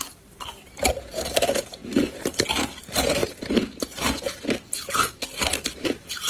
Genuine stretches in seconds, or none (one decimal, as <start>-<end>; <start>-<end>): none